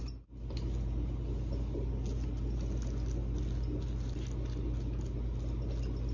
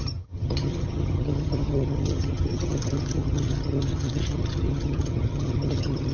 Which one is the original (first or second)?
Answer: first